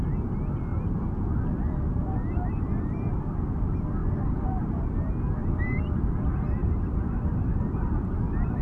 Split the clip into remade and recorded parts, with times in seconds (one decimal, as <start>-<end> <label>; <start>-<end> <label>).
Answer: 0.0-6.6 recorded; 6.6-8.2 remade; 8.2-8.6 recorded